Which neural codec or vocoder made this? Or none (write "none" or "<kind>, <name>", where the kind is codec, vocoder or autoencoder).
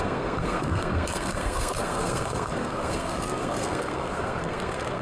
codec, SNAC